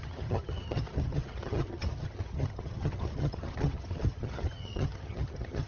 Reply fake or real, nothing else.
fake